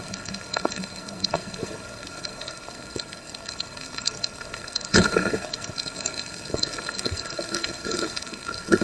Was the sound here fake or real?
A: fake